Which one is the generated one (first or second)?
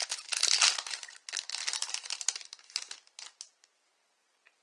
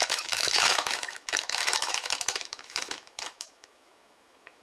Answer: second